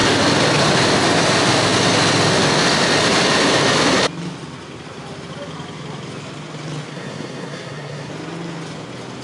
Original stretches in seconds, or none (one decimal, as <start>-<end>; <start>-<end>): 0.0-6.9; 8.1-9.2